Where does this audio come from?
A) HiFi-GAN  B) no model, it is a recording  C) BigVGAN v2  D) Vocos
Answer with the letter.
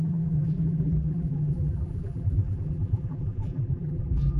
C